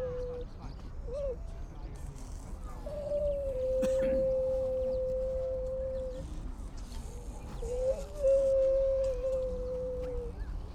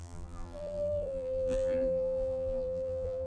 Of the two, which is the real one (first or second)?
first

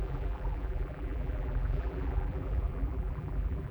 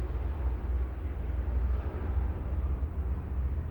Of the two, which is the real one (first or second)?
second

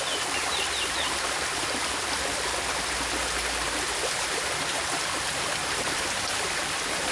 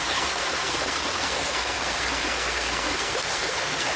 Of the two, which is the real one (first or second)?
first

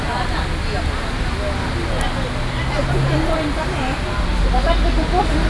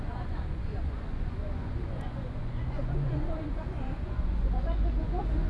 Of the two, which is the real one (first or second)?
first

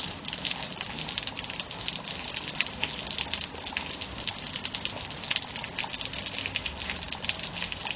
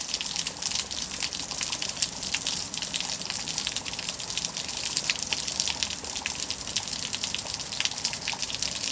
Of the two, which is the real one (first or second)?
first